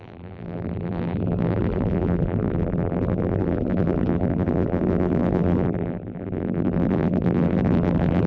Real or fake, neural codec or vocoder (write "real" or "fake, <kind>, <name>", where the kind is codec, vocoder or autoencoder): fake, vocoder, BigVGAN v2